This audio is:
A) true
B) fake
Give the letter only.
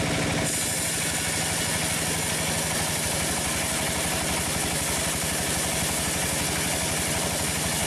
A